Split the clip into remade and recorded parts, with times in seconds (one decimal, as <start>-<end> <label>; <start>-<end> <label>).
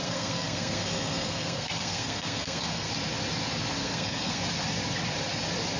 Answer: 0.0-2.9 remade; 2.9-3.8 recorded; 3.8-4.4 remade; 4.4-5.8 recorded